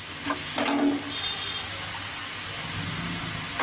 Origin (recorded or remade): recorded